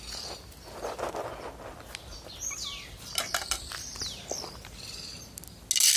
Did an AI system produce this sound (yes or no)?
no